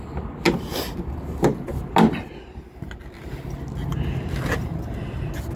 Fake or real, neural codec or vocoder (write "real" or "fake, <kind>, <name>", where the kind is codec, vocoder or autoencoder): real